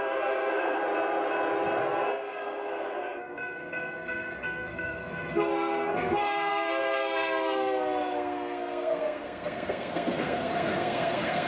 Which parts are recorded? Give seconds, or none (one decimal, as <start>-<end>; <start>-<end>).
0.8-1.8